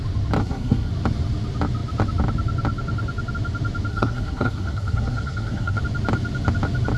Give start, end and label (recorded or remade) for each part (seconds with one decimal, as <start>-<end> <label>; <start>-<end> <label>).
0.0-0.4 recorded; 0.4-0.9 remade; 0.9-3.9 recorded; 3.9-5.8 remade; 5.8-7.0 recorded